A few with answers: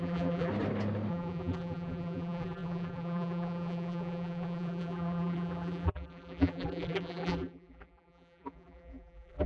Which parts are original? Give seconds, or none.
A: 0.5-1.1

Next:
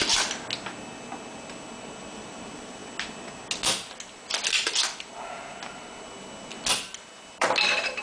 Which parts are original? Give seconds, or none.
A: 0.0-2.0; 2.8-7.2

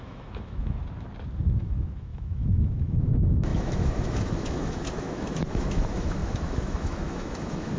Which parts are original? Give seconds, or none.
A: 0.8-1.4

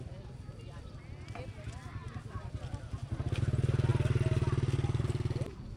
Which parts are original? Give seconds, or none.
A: 0.0-5.8

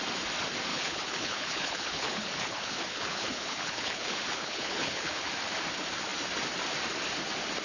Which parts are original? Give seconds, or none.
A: 0.0-0.7; 5.3-7.6

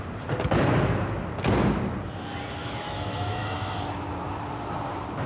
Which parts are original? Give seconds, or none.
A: 0.0-2.6; 3.7-5.3